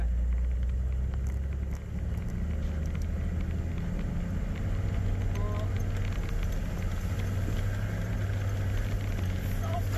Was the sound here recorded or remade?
recorded